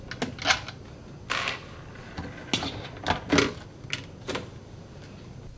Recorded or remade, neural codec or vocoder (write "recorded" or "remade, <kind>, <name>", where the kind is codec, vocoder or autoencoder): recorded